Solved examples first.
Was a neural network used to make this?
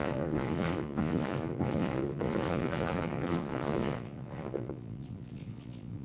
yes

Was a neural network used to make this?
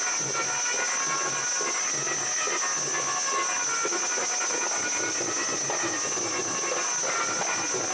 no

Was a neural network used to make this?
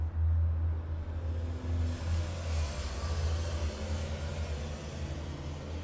no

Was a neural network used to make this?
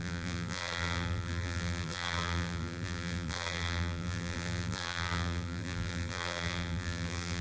yes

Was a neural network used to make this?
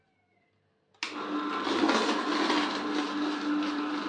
no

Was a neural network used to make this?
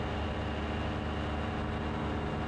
no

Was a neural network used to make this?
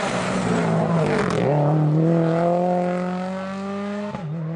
no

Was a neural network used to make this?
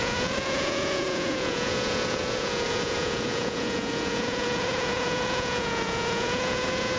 yes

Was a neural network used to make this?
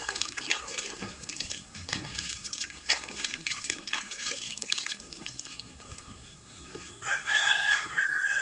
yes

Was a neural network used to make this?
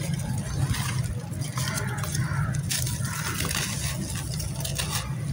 no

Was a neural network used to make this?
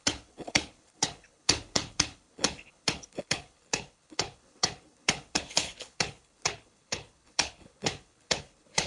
yes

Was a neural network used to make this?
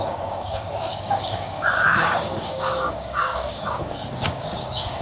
yes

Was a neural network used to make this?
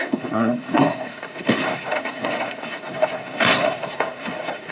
yes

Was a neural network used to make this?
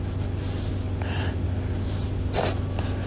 no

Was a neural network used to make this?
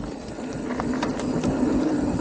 no